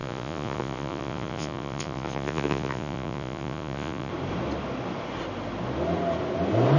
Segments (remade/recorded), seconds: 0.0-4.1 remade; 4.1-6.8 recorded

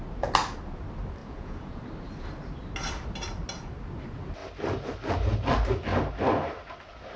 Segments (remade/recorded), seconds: 0.0-1.2 recorded; 1.2-1.8 remade; 1.8-7.2 recorded

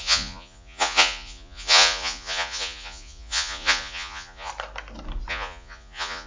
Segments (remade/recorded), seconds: 0.0-4.5 remade; 4.5-5.3 recorded; 5.3-6.3 remade